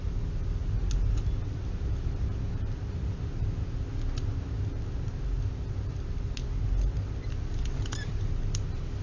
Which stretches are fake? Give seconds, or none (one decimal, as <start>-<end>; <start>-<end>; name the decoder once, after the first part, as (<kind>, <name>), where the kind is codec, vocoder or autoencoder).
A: none